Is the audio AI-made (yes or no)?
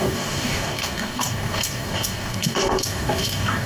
yes